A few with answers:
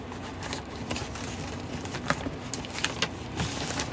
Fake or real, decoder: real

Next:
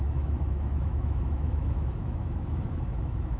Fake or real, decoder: fake, autoencoder, DAC-VAE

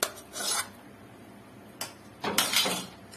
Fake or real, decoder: real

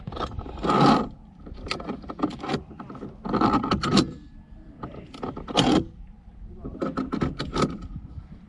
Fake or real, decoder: real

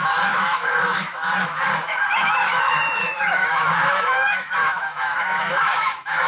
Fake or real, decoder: fake, autoencoder, DAC-VAE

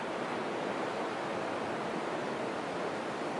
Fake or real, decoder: real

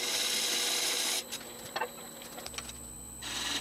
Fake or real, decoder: real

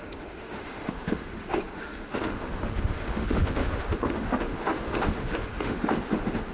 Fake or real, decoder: fake, autoencoder, DAC-VAE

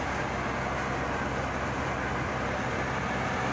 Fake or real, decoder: real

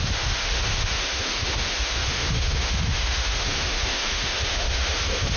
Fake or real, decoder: fake, autoencoder, DAC-VAE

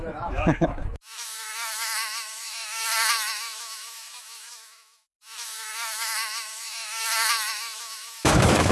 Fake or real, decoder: fake, autoencoder, DAC-VAE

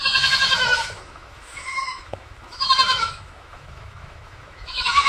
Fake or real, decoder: fake, autoencoder, DAC-VAE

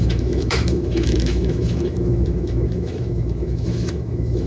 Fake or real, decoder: fake, autoencoder, DAC-VAE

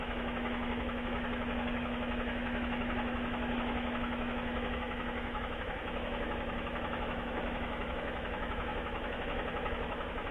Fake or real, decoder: fake, autoencoder, DAC-VAE